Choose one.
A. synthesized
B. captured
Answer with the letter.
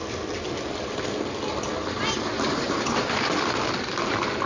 B